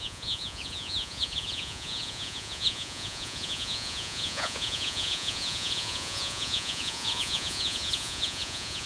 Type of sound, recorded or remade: remade